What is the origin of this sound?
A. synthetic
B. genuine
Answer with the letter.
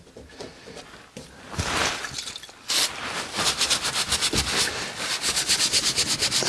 B